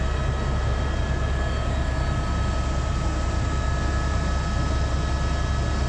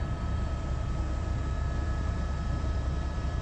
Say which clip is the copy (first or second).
second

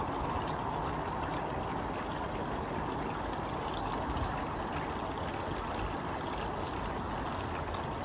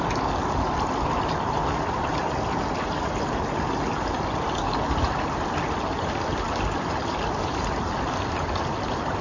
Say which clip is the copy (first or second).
second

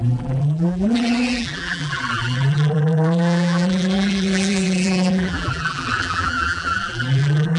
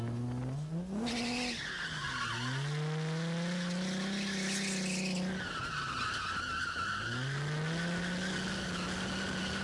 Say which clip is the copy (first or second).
first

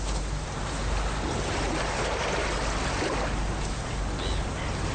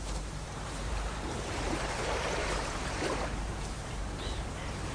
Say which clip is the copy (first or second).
second